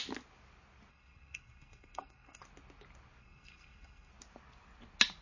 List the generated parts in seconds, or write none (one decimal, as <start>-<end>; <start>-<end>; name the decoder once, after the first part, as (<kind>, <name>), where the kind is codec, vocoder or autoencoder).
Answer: 0.9-2.4 (codec, SNAC); 3.2-4.1